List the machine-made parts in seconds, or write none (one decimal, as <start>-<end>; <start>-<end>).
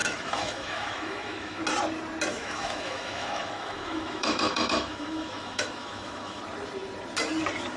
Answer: 0.0-1.6; 2.3-6.4